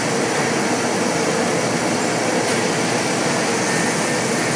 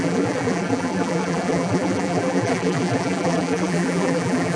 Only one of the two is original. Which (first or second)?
first